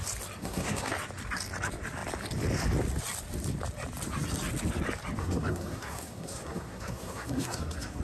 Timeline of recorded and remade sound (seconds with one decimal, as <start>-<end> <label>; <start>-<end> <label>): 0.0-0.4 recorded; 0.4-0.9 remade; 0.9-5.2 recorded; 5.2-8.0 remade